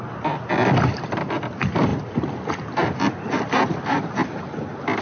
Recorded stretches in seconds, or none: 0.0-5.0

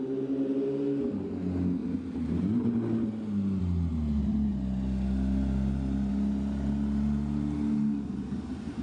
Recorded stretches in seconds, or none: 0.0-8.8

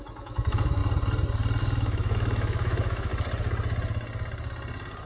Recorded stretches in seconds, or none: 0.8-1.6; 3.1-5.1